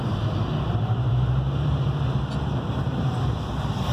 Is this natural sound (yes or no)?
no